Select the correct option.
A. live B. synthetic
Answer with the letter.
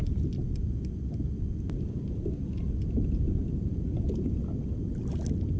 A